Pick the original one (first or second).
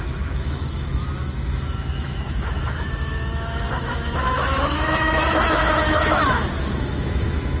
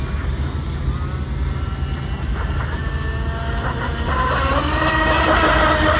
second